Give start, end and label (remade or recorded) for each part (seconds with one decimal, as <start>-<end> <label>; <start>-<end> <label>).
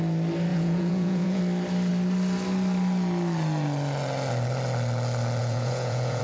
0.0-0.5 recorded; 0.5-1.4 remade; 1.4-5.4 recorded; 5.4-6.2 remade